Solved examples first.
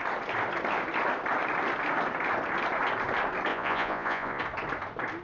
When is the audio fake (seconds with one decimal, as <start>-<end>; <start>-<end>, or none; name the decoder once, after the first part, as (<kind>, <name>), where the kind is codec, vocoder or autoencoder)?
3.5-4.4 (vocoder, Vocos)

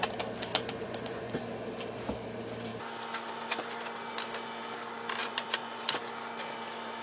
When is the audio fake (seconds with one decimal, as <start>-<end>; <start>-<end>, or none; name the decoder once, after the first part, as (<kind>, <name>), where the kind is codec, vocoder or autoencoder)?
0.5-1.3 (vocoder, Vocos); 5.2-6.0

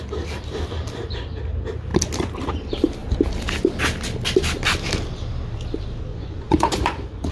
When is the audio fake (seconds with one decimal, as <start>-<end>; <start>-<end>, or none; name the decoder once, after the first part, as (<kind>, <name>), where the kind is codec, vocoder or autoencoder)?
6.1-7.3 (vocoder, Vocos)

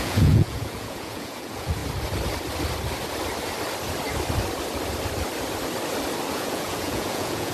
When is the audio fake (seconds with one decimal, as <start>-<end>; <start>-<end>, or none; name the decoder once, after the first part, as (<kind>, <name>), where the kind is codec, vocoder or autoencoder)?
0.0-1.8 (vocoder, Vocos); 6.3-7.5

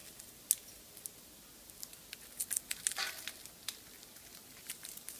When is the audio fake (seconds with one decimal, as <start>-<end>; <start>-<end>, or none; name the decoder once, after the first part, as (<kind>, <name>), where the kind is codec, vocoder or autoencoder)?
none